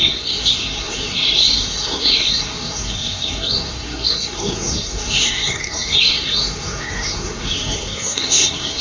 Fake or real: fake